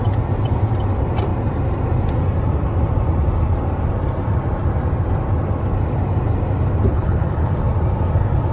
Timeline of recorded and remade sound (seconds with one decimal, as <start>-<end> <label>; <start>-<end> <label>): 0.0-6.9 recorded; 6.9-7.5 remade; 7.5-8.5 recorded